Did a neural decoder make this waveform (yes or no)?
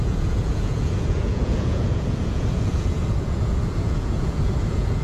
yes